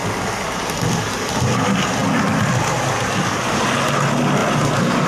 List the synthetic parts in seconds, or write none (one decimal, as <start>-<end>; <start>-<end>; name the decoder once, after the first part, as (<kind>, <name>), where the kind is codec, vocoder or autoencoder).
none